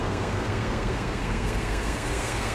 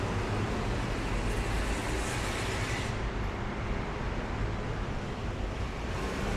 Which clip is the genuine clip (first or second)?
second